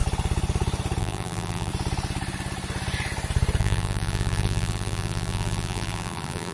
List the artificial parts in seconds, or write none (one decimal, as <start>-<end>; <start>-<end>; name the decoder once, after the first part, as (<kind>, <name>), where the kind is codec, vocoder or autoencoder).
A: 1.0-1.7 (vocoder, BigVGAN v2); 3.6-6.5